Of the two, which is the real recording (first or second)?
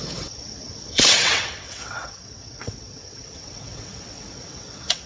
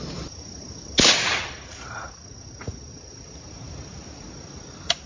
second